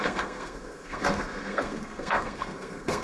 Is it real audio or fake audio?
fake